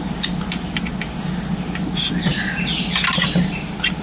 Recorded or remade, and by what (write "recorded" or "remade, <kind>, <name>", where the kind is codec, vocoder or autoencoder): recorded